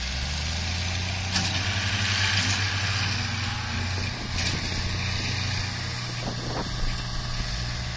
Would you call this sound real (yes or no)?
yes